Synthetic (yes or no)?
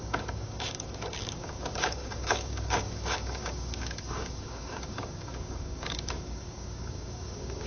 yes